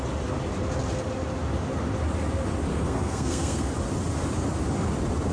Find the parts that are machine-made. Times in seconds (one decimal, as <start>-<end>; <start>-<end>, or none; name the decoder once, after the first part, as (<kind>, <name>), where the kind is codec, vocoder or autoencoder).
2.7-3.7 (codec, SNAC)